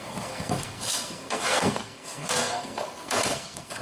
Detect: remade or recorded remade